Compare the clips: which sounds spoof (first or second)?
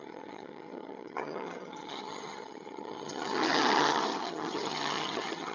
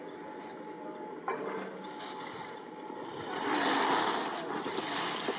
first